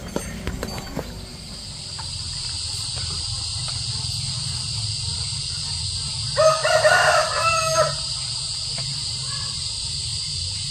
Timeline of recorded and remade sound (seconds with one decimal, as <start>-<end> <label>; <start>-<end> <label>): 0.0-0.8 remade; 0.8-1.3 recorded; 1.3-5.8 remade; 5.8-6.6 recorded; 6.6-7.4 remade; 7.4-10.1 recorded; 10.1-10.7 remade

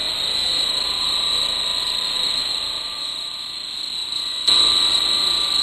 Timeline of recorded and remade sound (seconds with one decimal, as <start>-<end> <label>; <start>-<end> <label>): 0.0-5.6 recorded

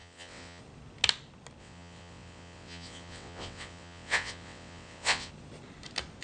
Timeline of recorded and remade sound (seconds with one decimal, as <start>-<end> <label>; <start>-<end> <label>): 0.0-0.6 remade; 0.6-1.6 recorded; 1.6-5.3 remade; 5.3-6.2 recorded

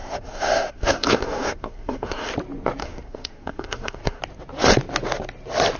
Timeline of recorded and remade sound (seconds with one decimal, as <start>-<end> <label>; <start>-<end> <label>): 0.0-2.3 remade; 2.3-2.8 recorded; 2.8-4.2 remade; 4.2-5.8 recorded

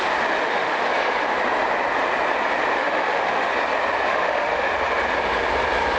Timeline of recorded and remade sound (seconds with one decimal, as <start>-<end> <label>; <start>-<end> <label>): 0.0-0.4 recorded; 0.4-0.9 remade; 0.9-2.8 recorded; 2.8-3.5 remade; 3.5-4.1 recorded; 4.1-4.7 remade; 4.7-6.0 recorded

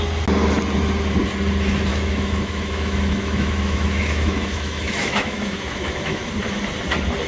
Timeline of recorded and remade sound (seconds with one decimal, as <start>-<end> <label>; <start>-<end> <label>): 0.0-1.9 recorded; 1.9-6.3 remade; 6.3-7.3 recorded

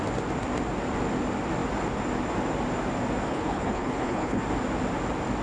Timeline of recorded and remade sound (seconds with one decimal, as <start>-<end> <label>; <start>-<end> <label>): 0.0-3.3 recorded; 3.3-4.4 remade; 4.4-5.4 recorded

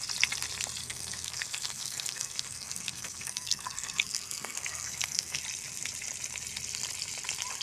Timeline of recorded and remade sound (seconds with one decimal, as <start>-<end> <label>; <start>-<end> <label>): 0.0-0.8 recorded; 0.8-5.4 remade; 5.4-7.6 recorded